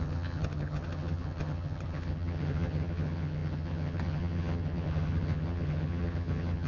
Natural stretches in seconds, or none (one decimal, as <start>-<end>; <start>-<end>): none